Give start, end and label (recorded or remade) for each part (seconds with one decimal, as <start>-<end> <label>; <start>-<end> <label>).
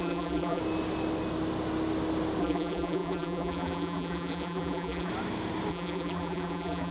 0.0-0.6 remade; 0.6-2.4 recorded; 2.4-5.1 remade; 5.1-5.7 recorded; 5.7-6.9 remade